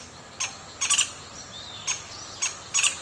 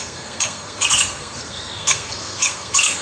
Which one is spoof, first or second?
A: second